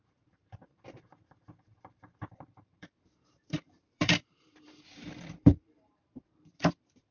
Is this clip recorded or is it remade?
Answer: remade